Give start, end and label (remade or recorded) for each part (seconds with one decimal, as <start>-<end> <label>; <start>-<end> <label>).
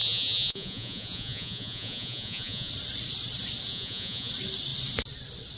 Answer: 0.0-2.7 remade; 2.7-3.7 recorded; 3.7-4.3 remade; 4.3-5.6 recorded